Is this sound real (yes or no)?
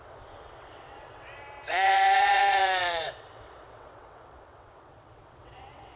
no